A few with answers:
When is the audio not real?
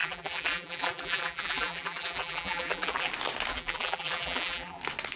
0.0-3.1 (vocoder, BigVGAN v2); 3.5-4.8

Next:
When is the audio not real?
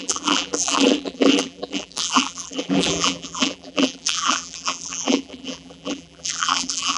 0.0-7.0 (vocoder, BigVGAN v2)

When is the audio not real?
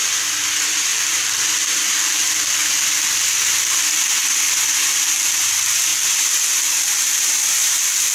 0.6-2.6 (vocoder, BigVGAN v2); 5.1-8.1